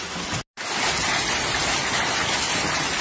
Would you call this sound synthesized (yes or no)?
no